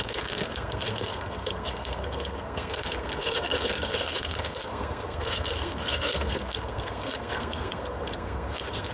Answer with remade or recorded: remade